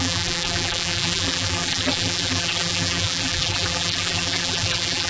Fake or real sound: fake